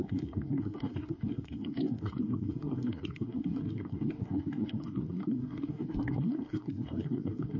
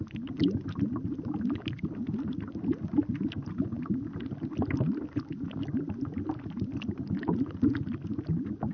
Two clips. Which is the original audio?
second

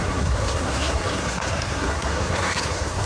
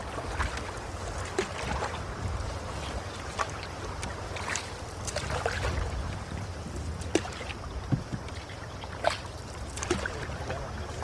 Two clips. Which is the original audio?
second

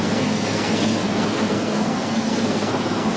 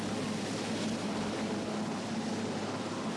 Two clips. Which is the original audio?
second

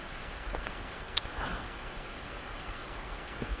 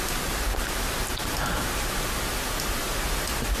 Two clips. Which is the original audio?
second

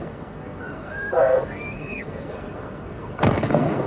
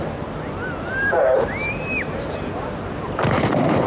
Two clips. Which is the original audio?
second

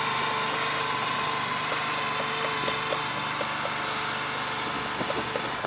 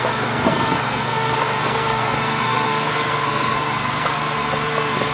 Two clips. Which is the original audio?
first